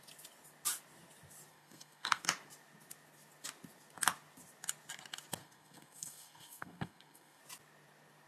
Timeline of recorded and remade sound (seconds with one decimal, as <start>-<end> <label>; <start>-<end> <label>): 0.0-1.5 recorded; 1.5-2.2 remade; 2.2-5.4 recorded; 5.4-7.4 remade; 7.4-8.3 recorded

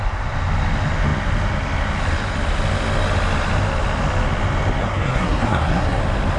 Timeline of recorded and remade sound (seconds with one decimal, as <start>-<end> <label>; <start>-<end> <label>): 0.0-4.8 recorded; 4.8-6.0 remade; 6.0-6.4 recorded

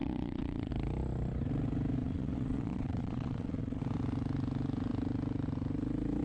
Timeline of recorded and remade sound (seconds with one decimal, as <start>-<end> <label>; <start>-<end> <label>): 0.0-0.7 remade; 0.7-2.0 recorded; 2.0-3.8 remade; 3.8-6.2 recorded

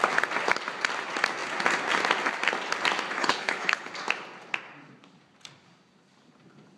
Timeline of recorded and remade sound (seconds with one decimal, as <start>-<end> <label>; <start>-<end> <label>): 0.0-3.2 recorded; 3.2-3.9 remade; 3.9-6.8 recorded

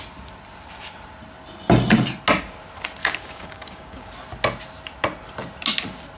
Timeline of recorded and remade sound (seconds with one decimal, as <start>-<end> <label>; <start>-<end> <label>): 0.0-3.0 recorded; 3.0-4.1 remade; 4.1-6.2 recorded

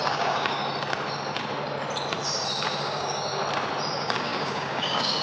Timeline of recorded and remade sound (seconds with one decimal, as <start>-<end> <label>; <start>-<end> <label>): 0.0-0.6 remade; 0.6-2.8 recorded; 2.8-3.4 remade; 3.4-3.9 recorded; 3.9-5.2 remade

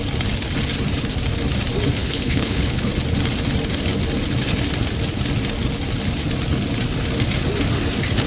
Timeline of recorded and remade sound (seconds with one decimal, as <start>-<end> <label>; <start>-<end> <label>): 0.0-2.0 recorded; 2.0-2.9 remade; 2.9-8.3 recorded

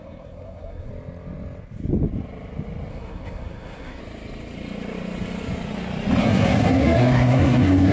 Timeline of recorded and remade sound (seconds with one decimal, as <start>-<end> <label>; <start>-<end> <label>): 0.0-0.9 remade; 0.9-2.9 recorded; 2.9-4.0 remade; 4.0-6.2 recorded; 6.2-7.9 remade